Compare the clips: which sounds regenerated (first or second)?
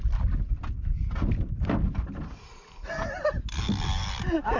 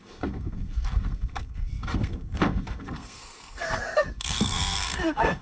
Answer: second